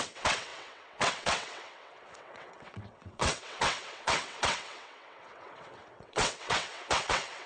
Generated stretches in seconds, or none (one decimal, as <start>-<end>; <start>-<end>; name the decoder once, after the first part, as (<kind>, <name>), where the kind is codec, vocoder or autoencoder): 0.0-7.5 (vocoder, WaveNeXt)